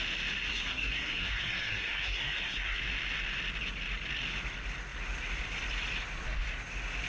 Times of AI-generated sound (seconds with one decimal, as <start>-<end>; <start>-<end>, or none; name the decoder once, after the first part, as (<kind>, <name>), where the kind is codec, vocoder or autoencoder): 0.5-2.8 (codec, SNAC)